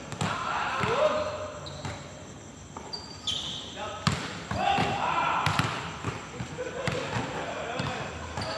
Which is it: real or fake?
real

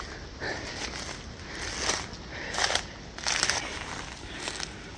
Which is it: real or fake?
real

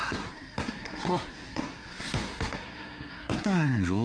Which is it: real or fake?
fake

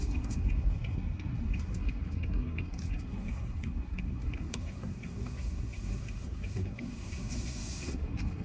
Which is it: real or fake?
fake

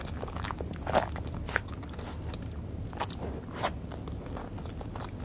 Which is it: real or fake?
real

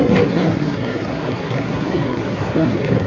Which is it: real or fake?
fake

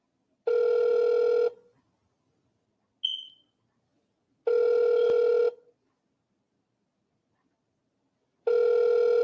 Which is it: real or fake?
real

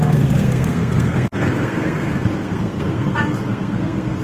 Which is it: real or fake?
fake